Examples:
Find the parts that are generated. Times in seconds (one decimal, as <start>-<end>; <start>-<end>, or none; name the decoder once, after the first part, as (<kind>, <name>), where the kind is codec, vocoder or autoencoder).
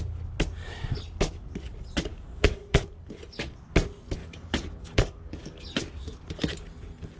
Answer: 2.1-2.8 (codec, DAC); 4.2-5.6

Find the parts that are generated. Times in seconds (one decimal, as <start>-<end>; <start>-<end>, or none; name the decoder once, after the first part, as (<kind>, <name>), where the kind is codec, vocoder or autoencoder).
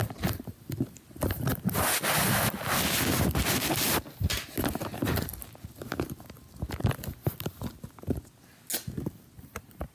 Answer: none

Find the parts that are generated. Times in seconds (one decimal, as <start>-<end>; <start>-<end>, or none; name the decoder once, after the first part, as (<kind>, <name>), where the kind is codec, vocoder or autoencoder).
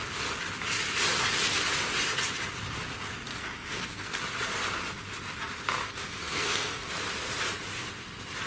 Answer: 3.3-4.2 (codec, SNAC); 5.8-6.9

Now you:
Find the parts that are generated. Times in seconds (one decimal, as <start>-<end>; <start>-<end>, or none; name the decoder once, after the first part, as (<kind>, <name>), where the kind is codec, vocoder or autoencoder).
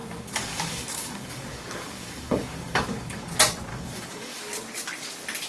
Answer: 0.0-3.3 (codec, DAC); 3.7-4.4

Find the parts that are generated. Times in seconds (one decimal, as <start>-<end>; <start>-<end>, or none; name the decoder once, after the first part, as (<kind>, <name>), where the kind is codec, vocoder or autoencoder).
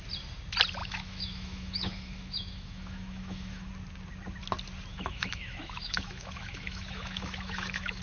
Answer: 0.8-3.7 (autoencoder, DAC-VAE); 4.9-8.0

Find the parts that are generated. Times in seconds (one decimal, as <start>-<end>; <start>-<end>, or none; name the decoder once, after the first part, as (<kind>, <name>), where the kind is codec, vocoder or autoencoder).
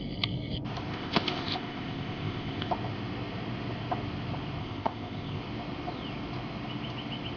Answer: 0.9-2.7 (codec, ZipCodec); 4.6-5.4